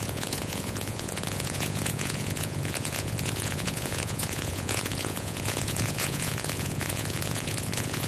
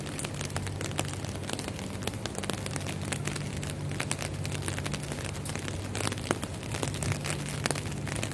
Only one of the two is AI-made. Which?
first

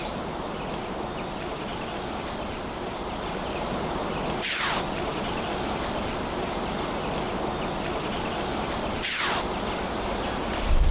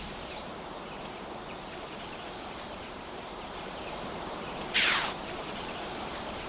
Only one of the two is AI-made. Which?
second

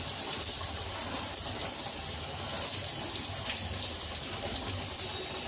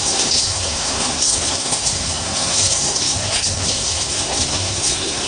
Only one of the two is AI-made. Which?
second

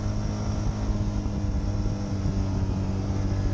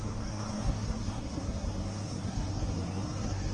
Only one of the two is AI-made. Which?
second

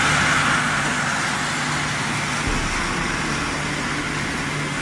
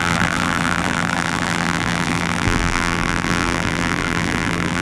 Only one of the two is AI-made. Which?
second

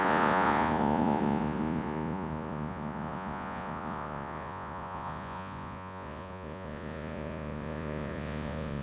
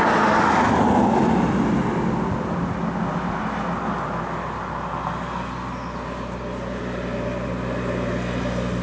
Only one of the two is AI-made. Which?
first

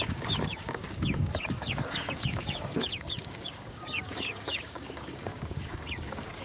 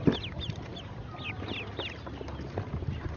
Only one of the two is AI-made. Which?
first